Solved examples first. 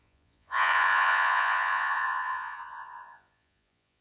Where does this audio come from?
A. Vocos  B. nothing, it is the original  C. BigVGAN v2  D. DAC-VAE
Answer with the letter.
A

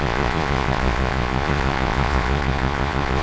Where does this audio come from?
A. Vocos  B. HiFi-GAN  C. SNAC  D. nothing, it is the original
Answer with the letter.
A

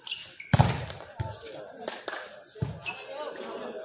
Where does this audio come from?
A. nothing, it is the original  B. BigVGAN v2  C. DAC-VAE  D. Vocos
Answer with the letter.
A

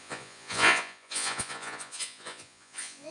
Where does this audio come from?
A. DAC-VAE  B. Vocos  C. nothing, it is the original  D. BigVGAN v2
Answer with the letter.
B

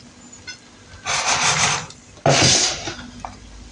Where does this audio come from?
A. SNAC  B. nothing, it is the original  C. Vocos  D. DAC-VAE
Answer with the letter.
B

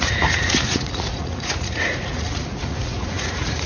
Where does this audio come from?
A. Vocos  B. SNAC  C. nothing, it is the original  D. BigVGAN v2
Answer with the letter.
A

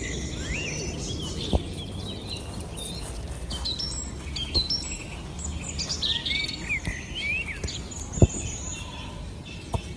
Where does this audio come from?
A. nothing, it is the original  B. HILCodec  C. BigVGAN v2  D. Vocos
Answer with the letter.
A